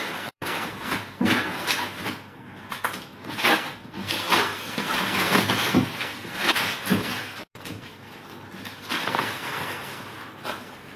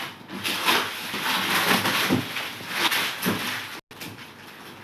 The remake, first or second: first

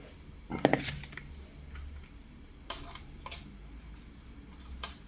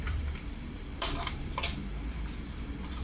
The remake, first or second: second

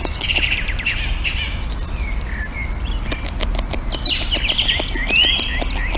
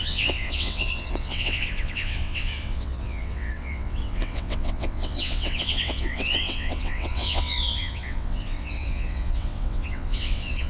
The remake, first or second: second